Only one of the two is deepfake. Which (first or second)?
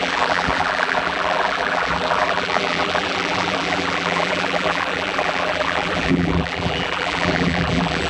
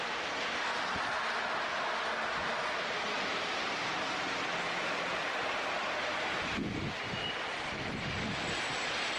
first